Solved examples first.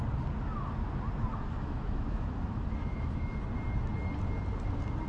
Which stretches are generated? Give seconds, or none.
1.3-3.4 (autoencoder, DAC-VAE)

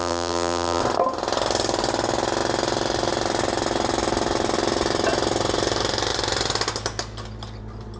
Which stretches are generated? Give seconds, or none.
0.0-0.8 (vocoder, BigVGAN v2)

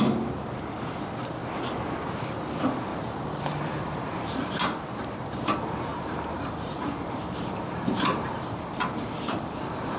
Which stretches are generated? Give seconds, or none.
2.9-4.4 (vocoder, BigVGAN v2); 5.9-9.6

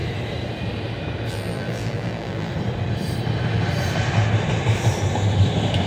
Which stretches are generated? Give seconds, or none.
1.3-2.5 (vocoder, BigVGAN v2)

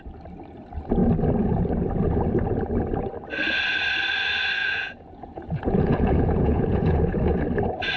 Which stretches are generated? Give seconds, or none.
4.6-7.4 (vocoder, Vocos)

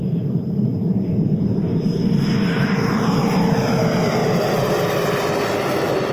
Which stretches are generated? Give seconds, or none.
0.0-0.7 (vocoder, BigVGAN v2); 2.6-4.2

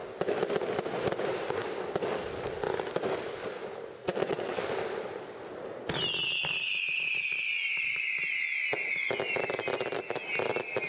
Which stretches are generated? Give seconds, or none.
4.0-4.6 (vocoder, WaveNeXt)